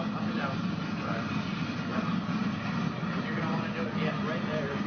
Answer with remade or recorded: recorded